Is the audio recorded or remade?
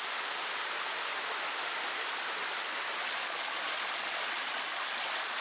recorded